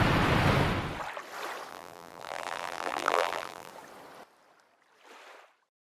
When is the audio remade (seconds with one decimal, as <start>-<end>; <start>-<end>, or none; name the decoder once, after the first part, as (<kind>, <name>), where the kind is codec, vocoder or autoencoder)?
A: 1.7-3.7 (vocoder, BigVGAN v2)